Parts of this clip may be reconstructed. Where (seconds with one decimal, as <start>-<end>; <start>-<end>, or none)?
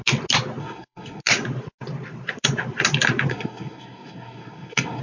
0.6-1.2; 3.3-5.0